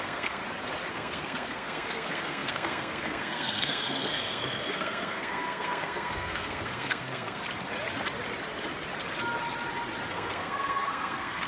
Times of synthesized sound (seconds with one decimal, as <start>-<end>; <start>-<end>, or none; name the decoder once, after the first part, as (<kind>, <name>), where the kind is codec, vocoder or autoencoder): 0.0-0.4 (codec, SNAC); 0.9-7.4; 10.1-11.5